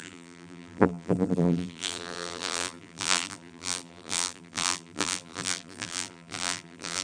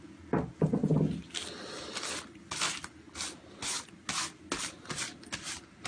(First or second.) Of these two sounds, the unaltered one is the second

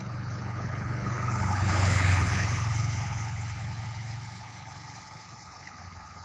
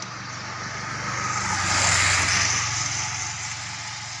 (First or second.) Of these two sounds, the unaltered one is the second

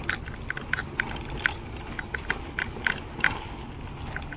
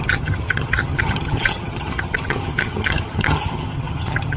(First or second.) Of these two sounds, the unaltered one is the first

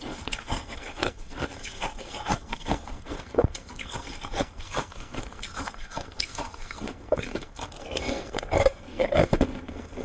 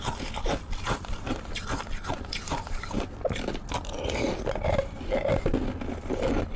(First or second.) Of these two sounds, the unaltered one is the second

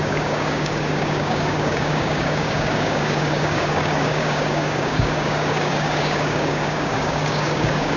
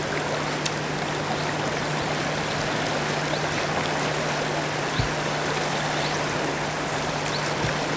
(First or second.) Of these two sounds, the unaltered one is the second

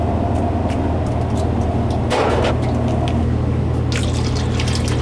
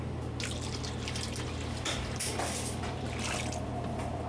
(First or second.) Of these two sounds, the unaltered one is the first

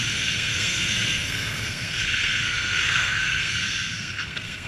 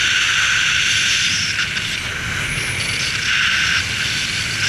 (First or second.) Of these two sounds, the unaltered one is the second